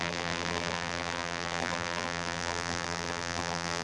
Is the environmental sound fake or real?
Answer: fake